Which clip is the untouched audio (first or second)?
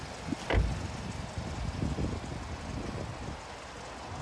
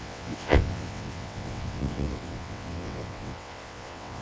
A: first